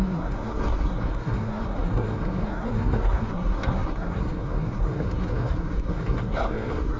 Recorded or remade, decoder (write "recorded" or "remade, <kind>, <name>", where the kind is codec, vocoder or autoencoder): remade, codec, SNAC